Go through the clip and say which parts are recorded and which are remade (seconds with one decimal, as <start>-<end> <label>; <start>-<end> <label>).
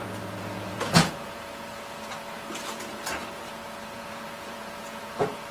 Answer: 0.0-5.5 remade